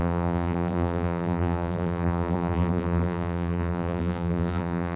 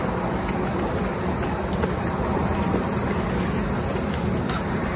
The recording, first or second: second